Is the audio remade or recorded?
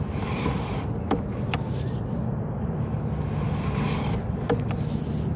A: recorded